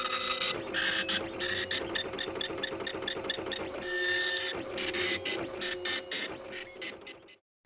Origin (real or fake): real